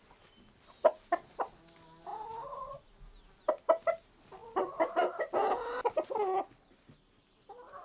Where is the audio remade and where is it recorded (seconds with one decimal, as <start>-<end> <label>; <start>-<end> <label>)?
0.0-7.8 recorded